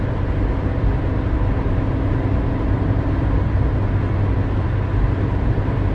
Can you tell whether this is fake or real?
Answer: real